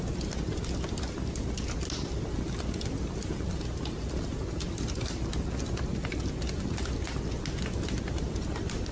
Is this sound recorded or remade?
recorded